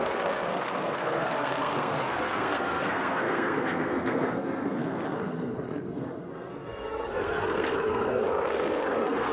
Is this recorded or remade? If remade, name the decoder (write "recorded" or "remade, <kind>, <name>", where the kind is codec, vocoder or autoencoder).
remade, codec, SNAC